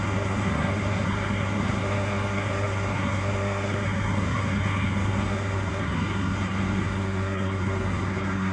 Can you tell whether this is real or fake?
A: fake